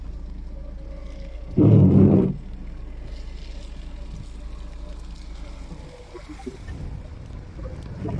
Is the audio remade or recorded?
recorded